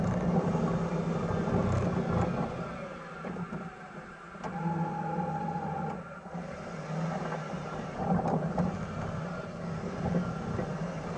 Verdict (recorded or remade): recorded